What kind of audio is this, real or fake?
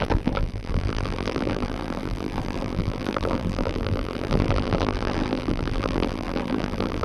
fake